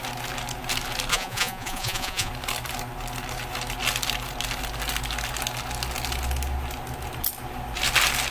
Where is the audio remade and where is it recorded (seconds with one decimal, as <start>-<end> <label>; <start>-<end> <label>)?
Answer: 0.0-1.1 recorded; 1.1-2.3 remade; 2.3-8.3 recorded

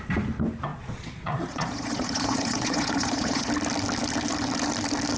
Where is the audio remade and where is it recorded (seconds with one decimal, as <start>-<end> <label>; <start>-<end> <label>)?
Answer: 0.0-0.7 recorded; 0.7-3.5 remade; 3.5-5.2 recorded

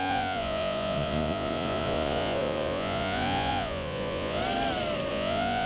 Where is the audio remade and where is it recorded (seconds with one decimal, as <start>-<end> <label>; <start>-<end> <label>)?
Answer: 0.0-4.4 remade; 4.4-5.1 recorded; 5.1-5.7 remade

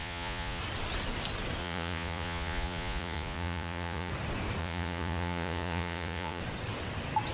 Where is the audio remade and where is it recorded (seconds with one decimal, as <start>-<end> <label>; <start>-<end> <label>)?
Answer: 0.0-0.6 remade; 0.6-1.6 recorded; 1.6-4.1 remade; 4.1-4.6 recorded; 4.6-6.4 remade; 6.4-7.3 recorded

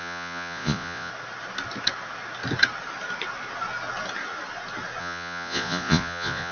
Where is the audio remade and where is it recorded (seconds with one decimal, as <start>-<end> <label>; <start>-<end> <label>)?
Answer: 0.0-1.1 remade; 1.1-5.0 recorded; 5.0-6.5 remade

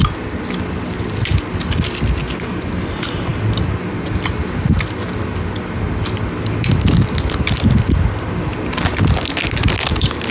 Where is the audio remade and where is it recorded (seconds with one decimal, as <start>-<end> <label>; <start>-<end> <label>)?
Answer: 0.0-2.2 recorded; 2.2-2.7 remade; 2.7-10.3 recorded